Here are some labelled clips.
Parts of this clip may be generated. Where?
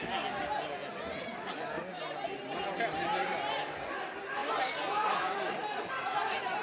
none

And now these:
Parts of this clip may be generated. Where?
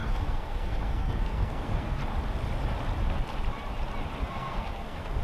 0.0-2.0 (codec, SNAC); 4.3-5.2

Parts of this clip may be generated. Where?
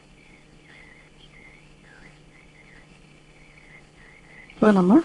0.0-5.0 (codec, HILCodec)